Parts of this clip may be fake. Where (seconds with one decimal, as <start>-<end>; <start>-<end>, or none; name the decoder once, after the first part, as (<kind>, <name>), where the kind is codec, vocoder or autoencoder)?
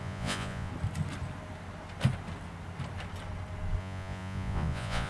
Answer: 0.0-0.7 (vocoder, Vocos); 3.8-5.1